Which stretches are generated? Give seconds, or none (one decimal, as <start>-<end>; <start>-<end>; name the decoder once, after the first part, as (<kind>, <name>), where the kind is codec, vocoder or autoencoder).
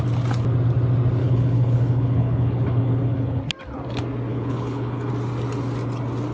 1.2-3.4 (codec, HILCodec); 4.3-5.1